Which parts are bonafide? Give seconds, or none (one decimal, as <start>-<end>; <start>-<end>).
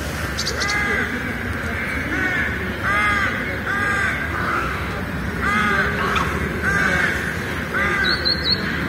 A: 0.0-4.4; 5.0-8.9